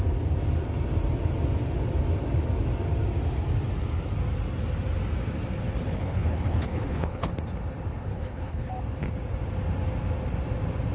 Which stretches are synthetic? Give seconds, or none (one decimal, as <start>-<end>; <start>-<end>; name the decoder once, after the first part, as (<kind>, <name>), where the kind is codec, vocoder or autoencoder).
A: 5.9-7.3 (codec, HILCodec); 8.1-8.7